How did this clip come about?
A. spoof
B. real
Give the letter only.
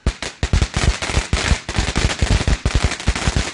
B